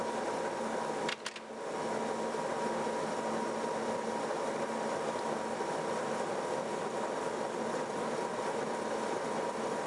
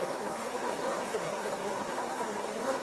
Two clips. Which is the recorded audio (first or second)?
first